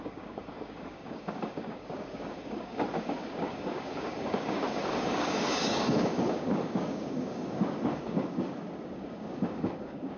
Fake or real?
fake